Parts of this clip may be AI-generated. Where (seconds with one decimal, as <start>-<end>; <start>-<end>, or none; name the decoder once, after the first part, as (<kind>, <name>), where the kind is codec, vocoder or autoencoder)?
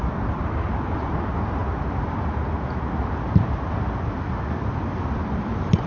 none